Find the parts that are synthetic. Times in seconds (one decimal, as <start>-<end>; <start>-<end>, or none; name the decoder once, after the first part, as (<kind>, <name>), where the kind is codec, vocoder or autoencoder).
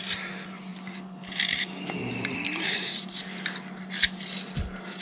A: 0.7-3.1 (vocoder, BigVGAN v2)